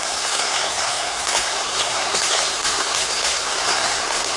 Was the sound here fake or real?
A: fake